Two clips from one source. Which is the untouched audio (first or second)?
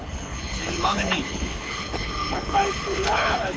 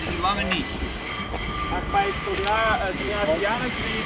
second